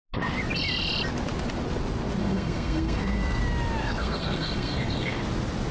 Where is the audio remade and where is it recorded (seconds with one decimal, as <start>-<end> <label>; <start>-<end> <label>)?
0.0-2.2 recorded; 2.2-3.4 remade; 3.4-3.8 recorded; 3.8-5.2 remade; 5.2-5.7 recorded